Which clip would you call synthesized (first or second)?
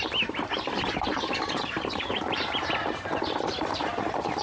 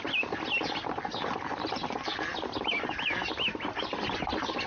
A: first